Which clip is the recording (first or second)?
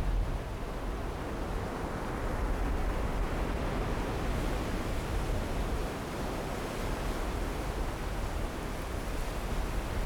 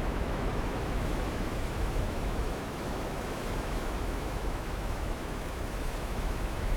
first